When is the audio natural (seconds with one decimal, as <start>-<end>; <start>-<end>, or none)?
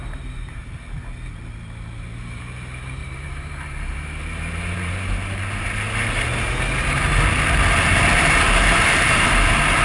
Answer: 0.6-3.0; 4.9-8.1; 9.3-9.8